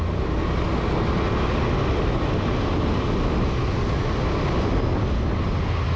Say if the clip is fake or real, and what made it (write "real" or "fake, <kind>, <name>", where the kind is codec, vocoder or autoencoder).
real